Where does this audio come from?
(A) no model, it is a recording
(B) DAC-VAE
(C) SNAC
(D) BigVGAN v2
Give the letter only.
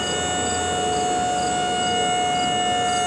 A